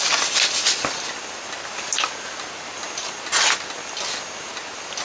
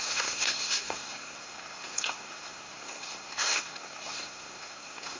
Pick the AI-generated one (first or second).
second